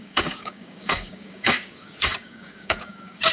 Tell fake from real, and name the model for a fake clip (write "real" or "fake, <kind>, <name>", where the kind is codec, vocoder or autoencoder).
fake, codec, DAC